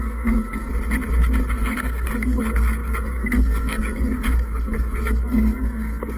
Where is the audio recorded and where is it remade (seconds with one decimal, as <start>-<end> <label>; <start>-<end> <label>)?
0.0-0.7 remade; 0.7-1.5 recorded; 1.5-6.2 remade